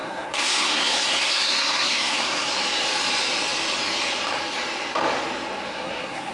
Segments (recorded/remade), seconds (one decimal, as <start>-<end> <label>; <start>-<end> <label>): 0.0-2.5 remade; 2.5-5.7 recorded; 5.7-6.3 remade